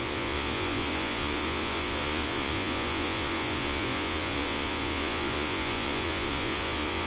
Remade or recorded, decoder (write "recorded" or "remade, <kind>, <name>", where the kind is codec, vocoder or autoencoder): remade, vocoder, Vocos